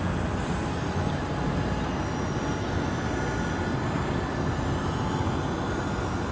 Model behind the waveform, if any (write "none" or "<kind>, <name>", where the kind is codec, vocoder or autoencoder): none